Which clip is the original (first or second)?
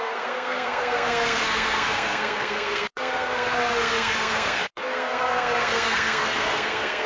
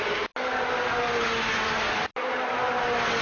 second